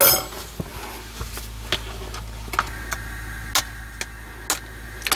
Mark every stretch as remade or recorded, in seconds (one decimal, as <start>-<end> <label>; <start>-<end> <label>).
0.0-5.1 recorded